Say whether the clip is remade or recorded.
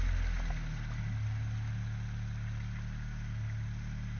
recorded